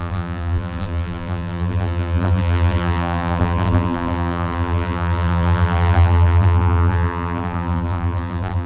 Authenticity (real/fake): fake